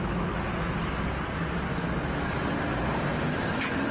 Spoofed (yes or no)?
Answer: no